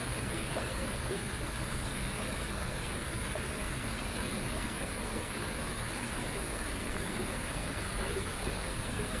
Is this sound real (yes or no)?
no